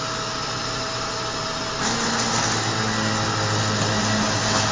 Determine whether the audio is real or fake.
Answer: real